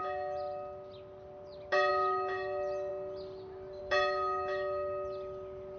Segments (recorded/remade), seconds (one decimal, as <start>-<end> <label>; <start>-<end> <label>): 0.0-5.8 recorded